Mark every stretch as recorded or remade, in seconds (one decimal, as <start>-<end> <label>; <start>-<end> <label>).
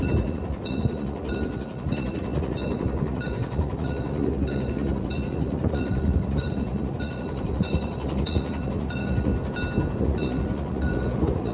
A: 0.0-9.3 remade; 9.3-10.0 recorded; 10.0-11.5 remade